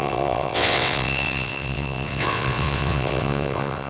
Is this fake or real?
fake